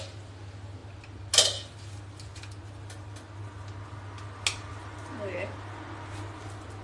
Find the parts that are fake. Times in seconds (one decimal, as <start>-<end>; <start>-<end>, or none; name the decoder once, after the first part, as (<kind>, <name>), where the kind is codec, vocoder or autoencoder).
none

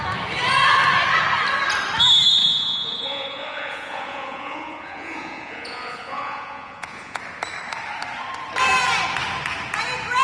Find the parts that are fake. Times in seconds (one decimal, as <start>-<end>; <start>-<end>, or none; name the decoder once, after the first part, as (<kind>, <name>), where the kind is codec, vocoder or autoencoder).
2.4-7.2 (vocoder, Vocos)

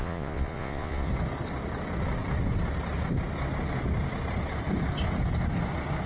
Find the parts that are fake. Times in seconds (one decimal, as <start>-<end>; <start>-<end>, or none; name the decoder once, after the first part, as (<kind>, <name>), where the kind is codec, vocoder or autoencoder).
0.0-1.1 (vocoder, Vocos)

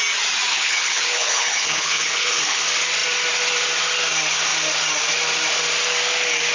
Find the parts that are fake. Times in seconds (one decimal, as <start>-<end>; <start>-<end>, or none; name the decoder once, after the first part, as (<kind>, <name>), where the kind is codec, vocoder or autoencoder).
0.5-2.6 (codec, HILCodec)

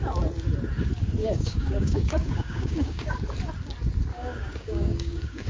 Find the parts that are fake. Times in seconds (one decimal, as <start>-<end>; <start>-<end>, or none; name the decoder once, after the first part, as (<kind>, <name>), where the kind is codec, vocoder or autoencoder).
1.2-3.1 (codec, DAC); 4.1-5.5

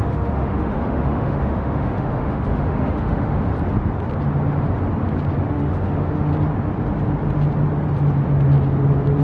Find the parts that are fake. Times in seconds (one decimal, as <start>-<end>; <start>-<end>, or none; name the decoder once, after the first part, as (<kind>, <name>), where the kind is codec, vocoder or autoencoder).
0.0-3.5 (autoencoder, DAC-VAE); 5.5-6.3

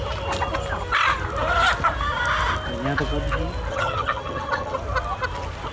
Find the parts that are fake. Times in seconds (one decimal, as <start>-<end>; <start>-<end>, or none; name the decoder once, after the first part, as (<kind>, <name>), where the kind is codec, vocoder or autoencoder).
3.7-4.8 (vocoder, HiFi-GAN)

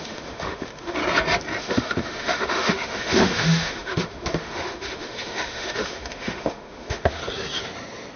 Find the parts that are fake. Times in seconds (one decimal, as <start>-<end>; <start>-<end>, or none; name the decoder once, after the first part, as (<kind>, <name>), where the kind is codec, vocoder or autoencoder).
0.0-1.0 (autoencoder, DAC-VAE); 1.6-7.2